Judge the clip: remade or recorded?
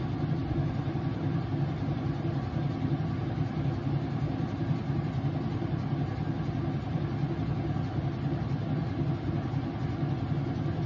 recorded